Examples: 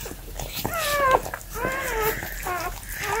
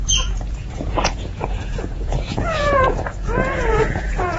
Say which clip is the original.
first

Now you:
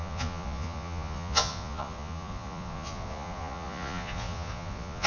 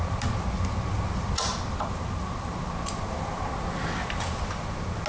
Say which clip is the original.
second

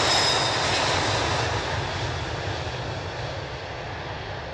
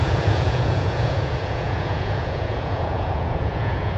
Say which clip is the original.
first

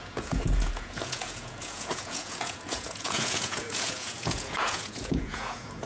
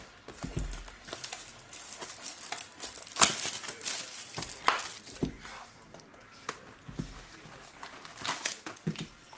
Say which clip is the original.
second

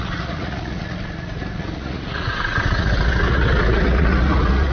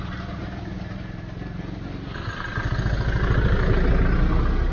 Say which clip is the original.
second